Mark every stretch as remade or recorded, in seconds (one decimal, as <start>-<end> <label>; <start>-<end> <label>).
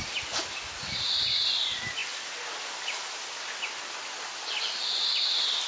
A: 0.0-5.7 recorded